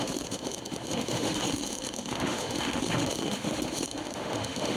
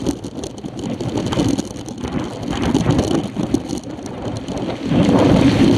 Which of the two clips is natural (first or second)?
second